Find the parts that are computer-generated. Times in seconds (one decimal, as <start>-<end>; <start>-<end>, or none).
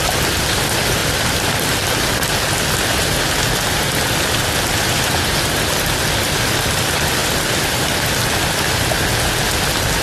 none